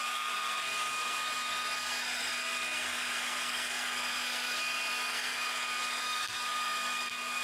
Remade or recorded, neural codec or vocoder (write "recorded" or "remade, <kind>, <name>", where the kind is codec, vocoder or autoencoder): remade, codec, SNAC